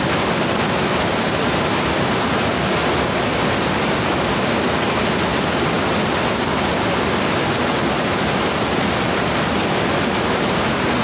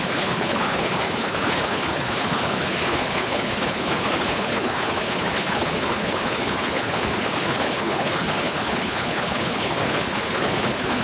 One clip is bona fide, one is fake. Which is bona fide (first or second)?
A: first